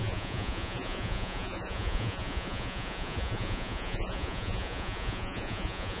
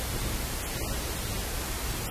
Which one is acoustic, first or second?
second